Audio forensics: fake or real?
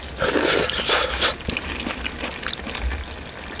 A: real